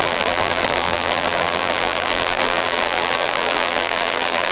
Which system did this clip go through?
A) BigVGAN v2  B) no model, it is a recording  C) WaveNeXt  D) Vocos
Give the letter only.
A